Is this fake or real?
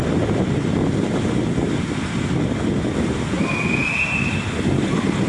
real